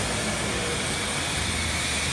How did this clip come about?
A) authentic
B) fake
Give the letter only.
A